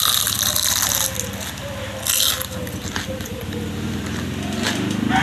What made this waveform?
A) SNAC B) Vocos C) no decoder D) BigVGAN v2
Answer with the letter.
C